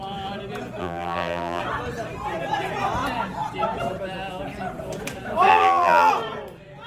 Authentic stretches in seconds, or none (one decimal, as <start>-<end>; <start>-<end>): 0.0-0.8; 1.6-5.5; 6.1-6.9